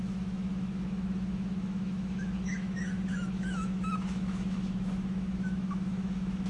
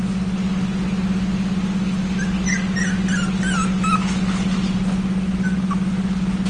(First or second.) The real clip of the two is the second